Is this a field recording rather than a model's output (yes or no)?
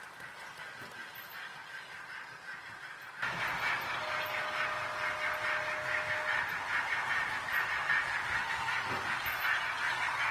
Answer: yes